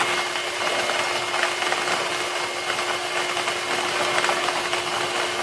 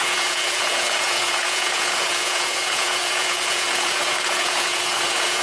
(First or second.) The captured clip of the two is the first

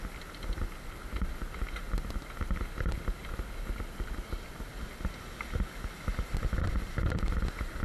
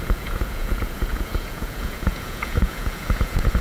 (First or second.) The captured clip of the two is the first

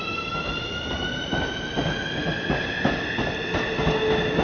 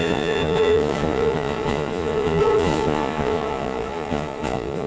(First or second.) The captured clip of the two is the first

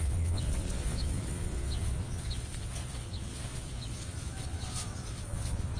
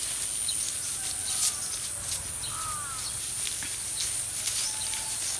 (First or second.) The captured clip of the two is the second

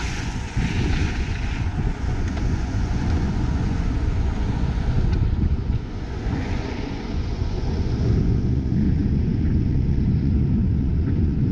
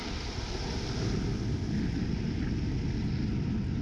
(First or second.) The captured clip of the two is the second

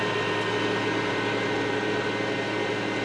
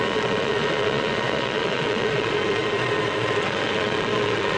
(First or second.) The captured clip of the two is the first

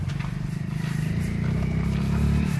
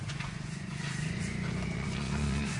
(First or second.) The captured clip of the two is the first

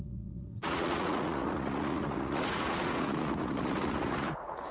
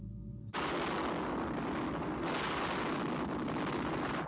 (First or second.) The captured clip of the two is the second